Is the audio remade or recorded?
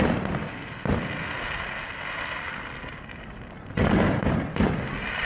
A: recorded